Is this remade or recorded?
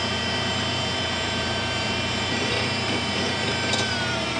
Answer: remade